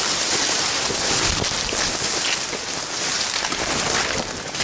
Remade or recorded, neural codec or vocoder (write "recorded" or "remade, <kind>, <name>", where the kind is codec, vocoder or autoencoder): recorded